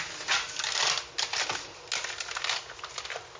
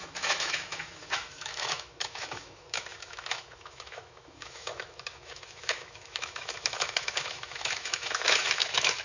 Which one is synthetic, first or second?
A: second